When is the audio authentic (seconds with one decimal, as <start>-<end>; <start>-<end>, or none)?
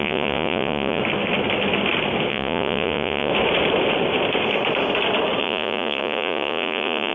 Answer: 1.0-2.3; 3.3-5.4